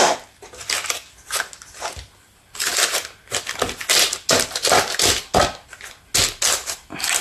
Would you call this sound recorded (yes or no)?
yes